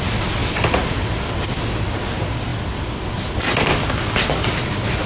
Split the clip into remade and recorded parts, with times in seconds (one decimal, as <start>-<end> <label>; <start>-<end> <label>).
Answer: 0.0-0.4 recorded; 0.4-1.2 remade; 1.2-5.1 recorded